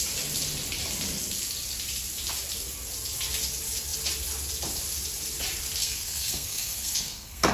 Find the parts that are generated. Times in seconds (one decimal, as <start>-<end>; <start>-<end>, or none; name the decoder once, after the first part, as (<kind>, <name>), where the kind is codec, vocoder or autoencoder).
5.8-7.5 (codec, SNAC)